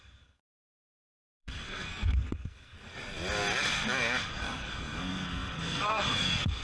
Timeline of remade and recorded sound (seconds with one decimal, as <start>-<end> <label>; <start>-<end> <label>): 0.0-2.9 remade; 2.9-4.3 recorded; 4.3-6.6 remade